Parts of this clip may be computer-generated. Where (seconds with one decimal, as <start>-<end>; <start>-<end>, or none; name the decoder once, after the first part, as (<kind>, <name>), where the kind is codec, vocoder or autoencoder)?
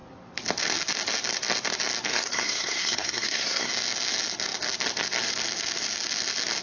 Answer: 2.1-3.7 (codec, SNAC)